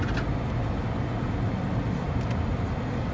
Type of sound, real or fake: real